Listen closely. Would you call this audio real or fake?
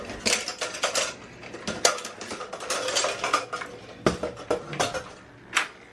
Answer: real